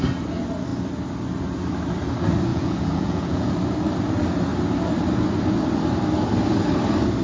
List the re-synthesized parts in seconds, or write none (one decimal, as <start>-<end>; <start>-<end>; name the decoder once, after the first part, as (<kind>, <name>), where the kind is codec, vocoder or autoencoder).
2.5-3.5 (vocoder, Vocos)